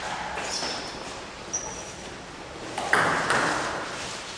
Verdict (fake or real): real